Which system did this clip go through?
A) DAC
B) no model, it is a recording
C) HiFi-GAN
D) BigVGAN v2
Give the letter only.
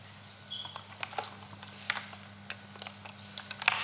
B